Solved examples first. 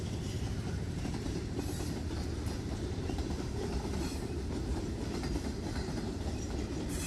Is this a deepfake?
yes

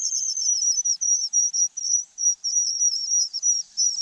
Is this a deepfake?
yes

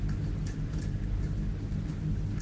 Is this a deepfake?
no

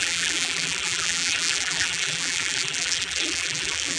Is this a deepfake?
yes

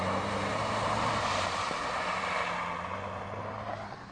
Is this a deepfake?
no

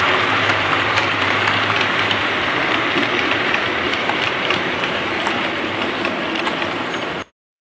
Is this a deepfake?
yes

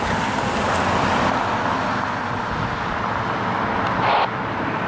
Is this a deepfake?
no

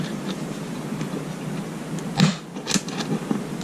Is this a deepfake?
no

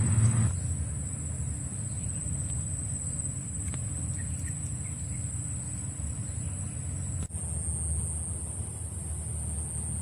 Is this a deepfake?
no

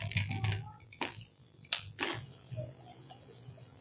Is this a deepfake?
yes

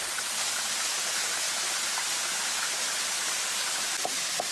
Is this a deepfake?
no